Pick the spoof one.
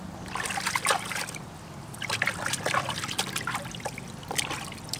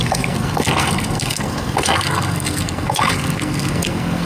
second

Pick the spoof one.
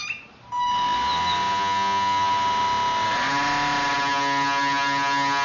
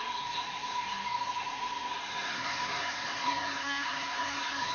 second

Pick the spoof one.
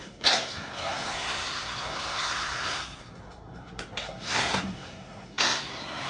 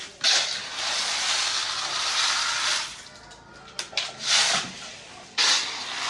first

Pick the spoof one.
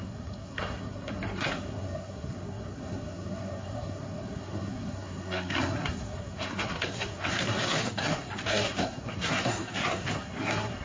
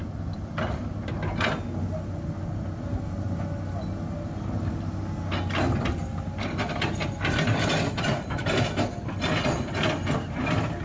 first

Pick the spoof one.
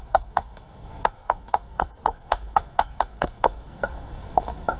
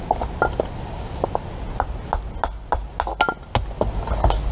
first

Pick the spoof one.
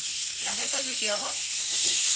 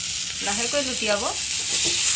first